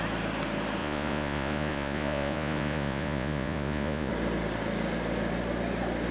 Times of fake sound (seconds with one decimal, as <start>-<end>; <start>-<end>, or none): 0.8-4.1